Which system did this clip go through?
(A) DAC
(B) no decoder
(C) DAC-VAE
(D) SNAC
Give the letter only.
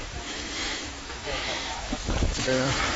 C